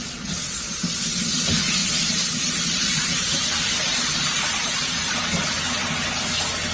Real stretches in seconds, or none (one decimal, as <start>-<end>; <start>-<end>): 0.0-1.8; 5.2-6.7